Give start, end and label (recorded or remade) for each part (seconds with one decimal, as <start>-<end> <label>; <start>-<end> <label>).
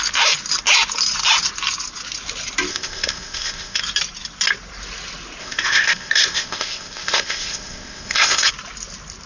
0.0-2.7 recorded; 2.7-3.8 remade; 3.8-5.4 recorded; 5.4-8.5 remade; 8.5-9.3 recorded